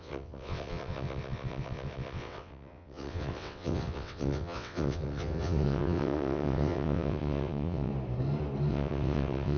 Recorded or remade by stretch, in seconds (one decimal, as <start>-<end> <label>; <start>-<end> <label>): 0.0-7.9 remade; 7.9-8.7 recorded; 8.7-9.6 remade